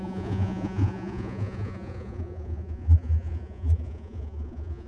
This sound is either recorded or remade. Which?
remade